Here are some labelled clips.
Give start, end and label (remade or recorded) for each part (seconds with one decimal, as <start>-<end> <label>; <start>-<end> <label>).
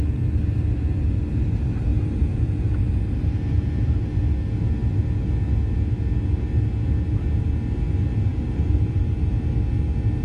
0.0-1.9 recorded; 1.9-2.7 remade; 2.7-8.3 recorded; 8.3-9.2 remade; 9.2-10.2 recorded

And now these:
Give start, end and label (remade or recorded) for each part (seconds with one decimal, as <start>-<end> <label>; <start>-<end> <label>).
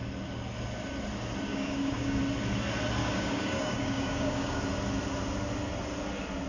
0.0-1.5 recorded; 1.5-2.2 remade; 2.2-3.0 recorded; 3.0-4.6 remade; 4.6-6.5 recorded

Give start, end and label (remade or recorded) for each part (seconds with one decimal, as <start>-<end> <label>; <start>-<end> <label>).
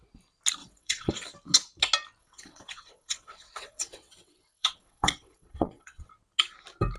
0.0-0.6 recorded; 0.6-1.1 remade; 1.1-2.2 recorded; 2.2-6.1 remade; 6.1-7.0 recorded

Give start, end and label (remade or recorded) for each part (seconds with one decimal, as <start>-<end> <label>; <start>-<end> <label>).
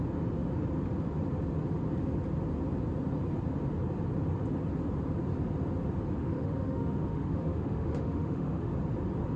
0.0-6.2 recorded; 6.2-8.7 remade; 8.7-9.4 recorded